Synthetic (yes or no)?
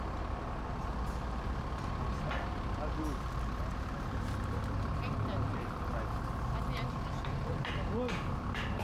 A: no